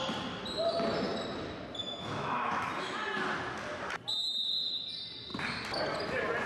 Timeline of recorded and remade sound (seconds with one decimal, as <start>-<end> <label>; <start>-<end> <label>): 0.0-1.8 recorded; 1.8-3.0 remade; 3.0-6.5 recorded